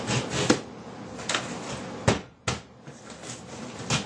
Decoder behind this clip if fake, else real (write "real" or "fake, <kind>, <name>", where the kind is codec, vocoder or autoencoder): real